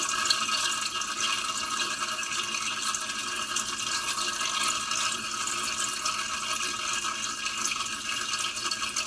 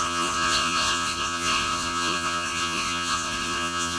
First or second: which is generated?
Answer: second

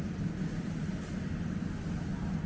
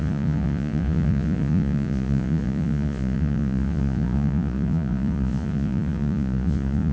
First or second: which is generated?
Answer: second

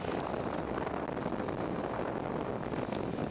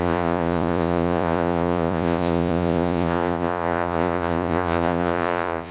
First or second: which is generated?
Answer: second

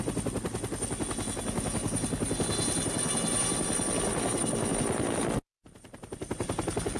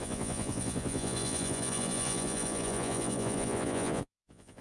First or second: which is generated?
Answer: second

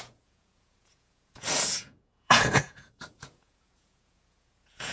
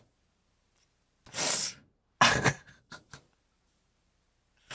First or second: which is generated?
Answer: first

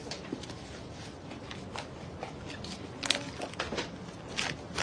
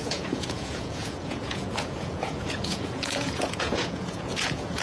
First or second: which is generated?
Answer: second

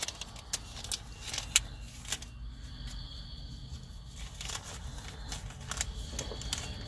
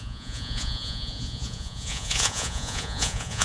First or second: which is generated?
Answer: second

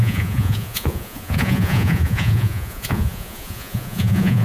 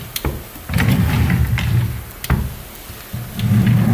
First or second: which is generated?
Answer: first